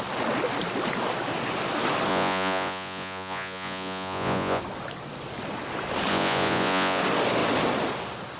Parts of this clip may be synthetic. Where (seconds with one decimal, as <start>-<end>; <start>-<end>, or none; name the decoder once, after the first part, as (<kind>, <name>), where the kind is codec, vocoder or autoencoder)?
2.1-4.6 (vocoder, Vocos); 6.1-7.0